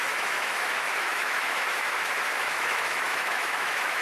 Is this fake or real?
fake